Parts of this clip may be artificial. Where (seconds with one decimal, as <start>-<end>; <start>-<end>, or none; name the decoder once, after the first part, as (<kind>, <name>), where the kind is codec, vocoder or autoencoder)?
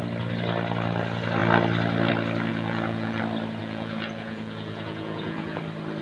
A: 2.5-3.2 (vocoder, Vocos); 3.6-5.6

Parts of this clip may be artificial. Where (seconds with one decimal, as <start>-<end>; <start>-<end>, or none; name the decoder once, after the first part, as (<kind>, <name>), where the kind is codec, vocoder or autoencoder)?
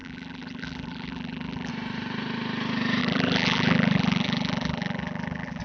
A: 0.0-1.7 (vocoder, BigVGAN v2); 3.0-5.6